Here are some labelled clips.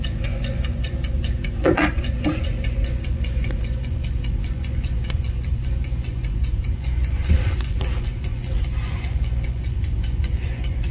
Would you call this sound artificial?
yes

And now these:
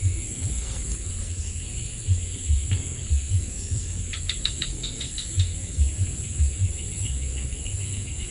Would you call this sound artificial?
yes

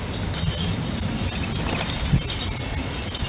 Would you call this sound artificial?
no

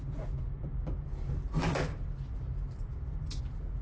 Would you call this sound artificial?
no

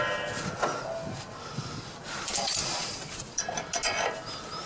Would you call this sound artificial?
no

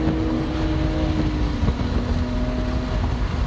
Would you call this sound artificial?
no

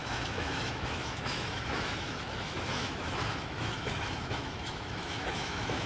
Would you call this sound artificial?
yes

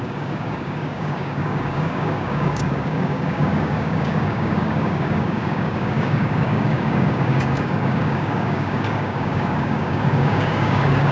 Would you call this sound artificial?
yes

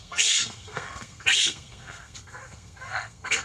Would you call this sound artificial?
yes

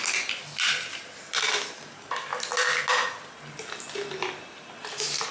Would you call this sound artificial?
no